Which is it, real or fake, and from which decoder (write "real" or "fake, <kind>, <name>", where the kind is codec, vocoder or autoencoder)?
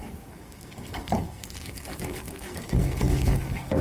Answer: fake, codec, SNAC